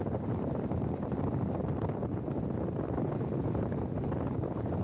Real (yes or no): yes